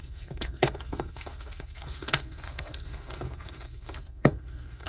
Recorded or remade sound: remade